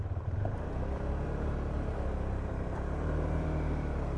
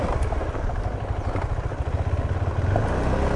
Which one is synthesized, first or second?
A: first